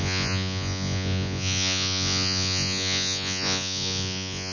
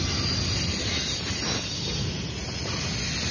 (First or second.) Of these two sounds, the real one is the second